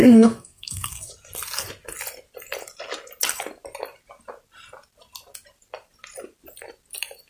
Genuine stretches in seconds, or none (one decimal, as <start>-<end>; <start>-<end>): 1.1-7.3